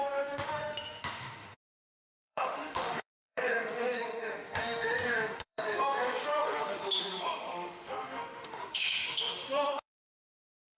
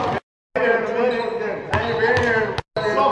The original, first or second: second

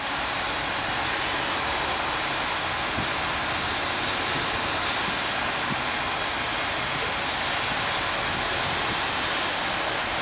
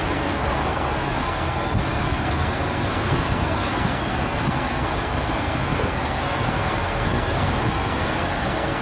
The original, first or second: first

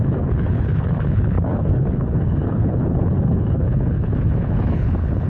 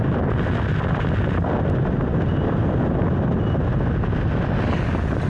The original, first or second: second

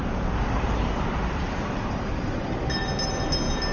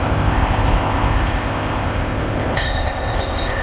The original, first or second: first